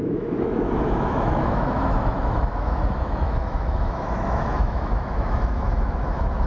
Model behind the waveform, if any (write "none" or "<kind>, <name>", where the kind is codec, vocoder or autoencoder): autoencoder, DAC-VAE